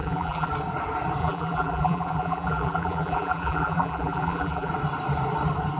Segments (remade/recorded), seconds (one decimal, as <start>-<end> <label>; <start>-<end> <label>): 0.0-0.5 remade; 0.5-1.2 recorded; 1.2-4.7 remade; 4.7-5.8 recorded